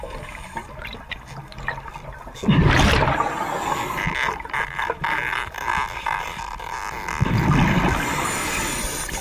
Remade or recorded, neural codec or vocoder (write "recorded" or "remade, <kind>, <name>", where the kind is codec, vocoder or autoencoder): recorded